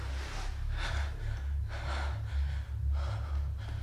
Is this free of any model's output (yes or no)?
yes